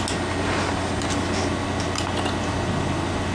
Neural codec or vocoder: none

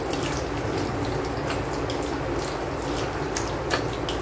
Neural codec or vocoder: none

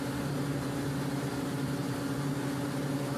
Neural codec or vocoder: none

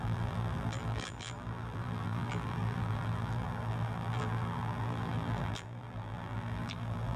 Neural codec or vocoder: vocoder, BigVGAN v2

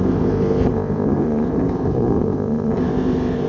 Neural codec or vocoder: codec, ZipCodec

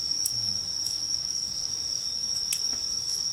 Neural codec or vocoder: codec, DAC